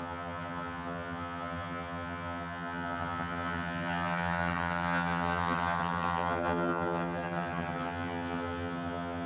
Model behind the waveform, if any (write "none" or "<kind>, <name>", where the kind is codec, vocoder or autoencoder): vocoder, HiFi-GAN